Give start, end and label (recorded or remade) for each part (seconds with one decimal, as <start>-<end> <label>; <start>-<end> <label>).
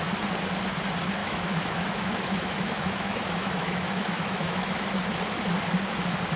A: 0.0-1.2 recorded; 1.2-4.9 remade; 4.9-6.4 recorded